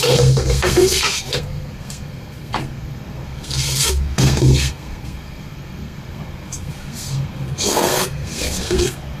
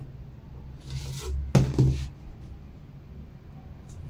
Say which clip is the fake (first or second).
first